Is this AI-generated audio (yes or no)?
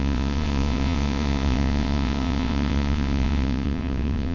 yes